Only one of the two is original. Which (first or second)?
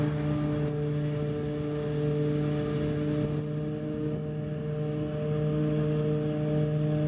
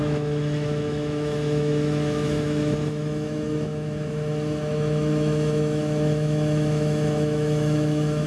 first